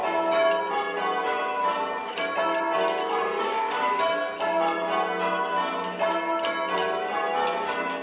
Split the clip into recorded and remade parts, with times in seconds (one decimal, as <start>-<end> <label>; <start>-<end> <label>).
0.0-3.0 recorded; 3.0-4.0 remade; 4.0-8.0 recorded